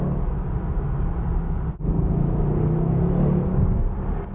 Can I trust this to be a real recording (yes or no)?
yes